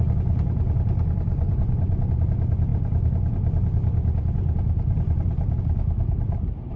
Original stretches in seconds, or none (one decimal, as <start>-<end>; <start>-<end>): 0.0-1.3; 2.1-6.8